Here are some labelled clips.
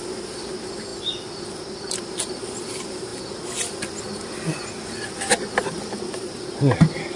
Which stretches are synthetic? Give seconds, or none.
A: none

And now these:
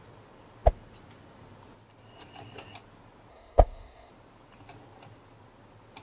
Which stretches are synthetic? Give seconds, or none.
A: 3.3-4.1 (codec, SNAC)

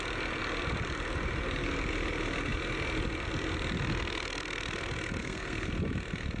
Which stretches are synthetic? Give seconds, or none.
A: 5.2-5.7 (codec, SNAC)

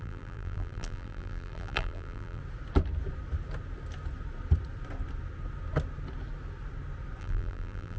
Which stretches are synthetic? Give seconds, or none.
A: 0.0-2.4 (vocoder, BigVGAN v2); 7.2-8.0

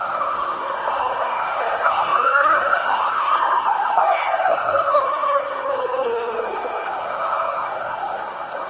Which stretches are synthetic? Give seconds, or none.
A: 0.0-8.7 (codec, SNAC)